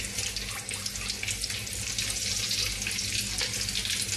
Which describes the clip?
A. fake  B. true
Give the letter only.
B